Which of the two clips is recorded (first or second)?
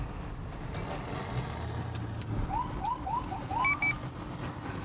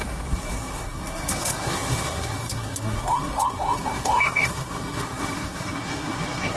first